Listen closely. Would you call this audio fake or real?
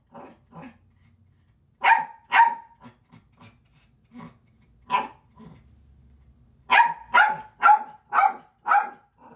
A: real